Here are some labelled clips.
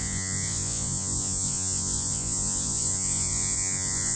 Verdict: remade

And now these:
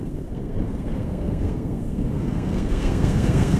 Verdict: remade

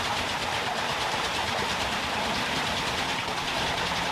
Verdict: recorded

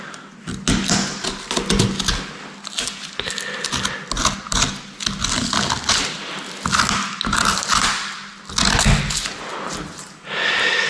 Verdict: recorded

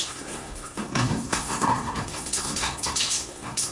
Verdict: remade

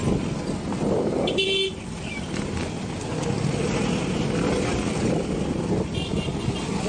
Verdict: recorded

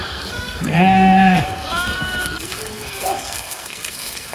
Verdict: remade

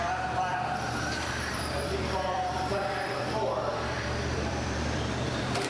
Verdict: remade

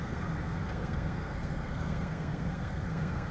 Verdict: remade